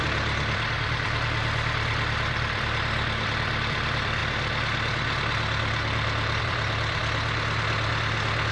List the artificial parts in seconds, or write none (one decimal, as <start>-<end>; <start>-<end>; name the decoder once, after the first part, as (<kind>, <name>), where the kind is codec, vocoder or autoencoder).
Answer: 0.0-4.2 (vocoder, BigVGAN v2); 6.4-7.0